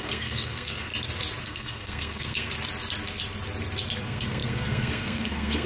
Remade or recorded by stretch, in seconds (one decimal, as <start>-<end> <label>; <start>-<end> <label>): 0.0-0.9 remade; 0.9-1.4 recorded; 1.4-2.5 remade; 2.5-4.0 recorded; 4.0-5.7 remade